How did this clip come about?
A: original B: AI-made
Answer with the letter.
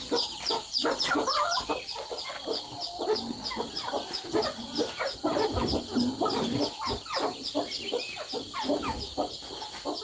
A